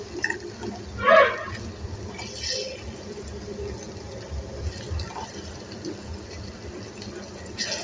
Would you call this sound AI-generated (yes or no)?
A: no